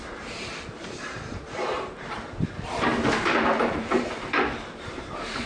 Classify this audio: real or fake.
fake